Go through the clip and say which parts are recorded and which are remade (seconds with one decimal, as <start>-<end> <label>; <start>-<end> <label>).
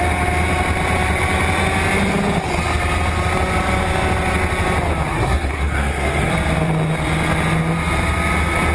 0.0-5.1 recorded; 5.1-6.3 remade; 6.3-8.7 recorded